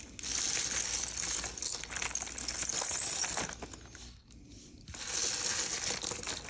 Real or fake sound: real